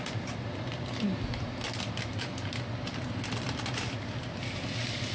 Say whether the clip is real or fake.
real